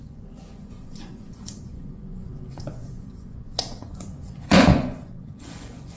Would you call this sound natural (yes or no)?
no